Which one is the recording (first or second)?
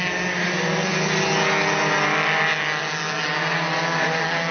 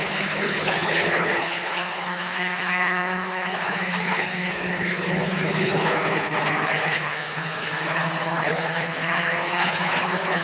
first